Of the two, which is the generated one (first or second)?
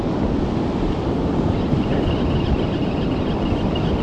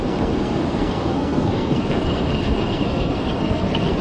second